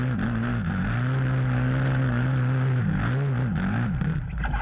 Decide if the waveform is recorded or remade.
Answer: recorded